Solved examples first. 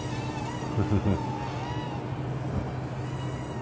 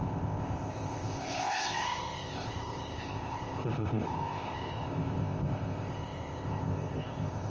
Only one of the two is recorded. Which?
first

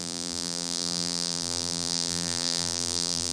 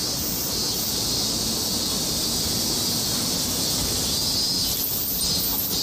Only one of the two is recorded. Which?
second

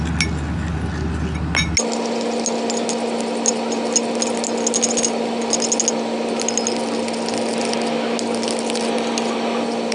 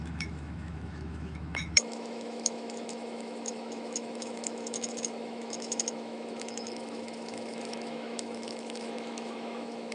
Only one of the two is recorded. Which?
first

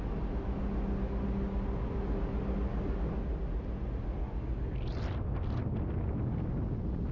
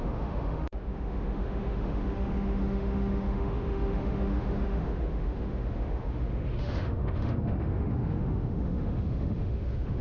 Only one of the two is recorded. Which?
first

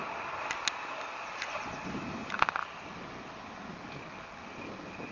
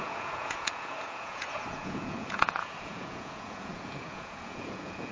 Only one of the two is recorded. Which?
first